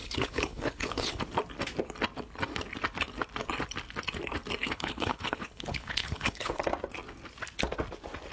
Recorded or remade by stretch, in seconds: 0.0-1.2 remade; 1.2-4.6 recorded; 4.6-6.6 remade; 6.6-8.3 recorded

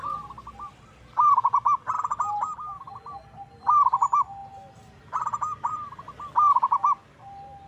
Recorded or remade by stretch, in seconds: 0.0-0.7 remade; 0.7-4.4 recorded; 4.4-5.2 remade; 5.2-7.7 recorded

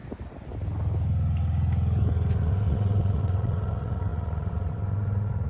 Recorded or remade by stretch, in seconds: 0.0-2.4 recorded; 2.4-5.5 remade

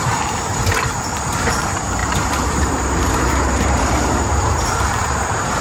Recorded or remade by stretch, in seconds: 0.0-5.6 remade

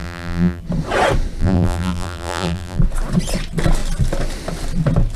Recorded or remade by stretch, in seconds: 0.0-0.6 remade; 0.6-1.4 recorded; 1.4-2.8 remade; 2.8-5.2 recorded

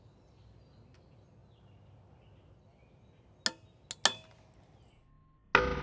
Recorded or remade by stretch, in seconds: 0.0-5.8 recorded

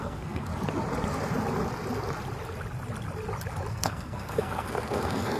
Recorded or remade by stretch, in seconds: 0.0-0.5 remade; 0.5-3.7 recorded; 3.7-5.4 remade

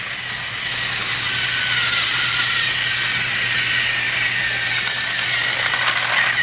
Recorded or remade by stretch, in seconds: 0.0-6.4 recorded